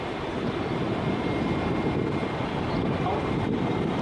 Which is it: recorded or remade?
recorded